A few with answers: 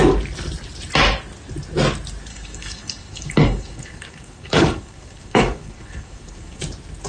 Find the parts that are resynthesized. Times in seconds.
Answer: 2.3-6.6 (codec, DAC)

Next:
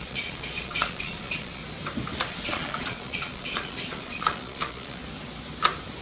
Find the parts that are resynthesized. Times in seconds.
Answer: 0.0-1.6 (vocoder, Vocos); 2.3-5.0